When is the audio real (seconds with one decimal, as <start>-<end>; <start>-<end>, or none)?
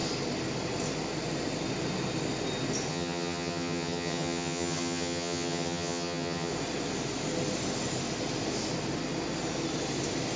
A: 0.0-2.9; 6.5-10.4